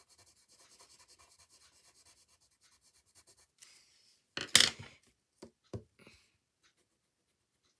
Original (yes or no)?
yes